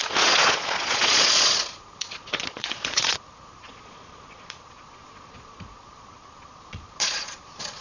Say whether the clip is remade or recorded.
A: remade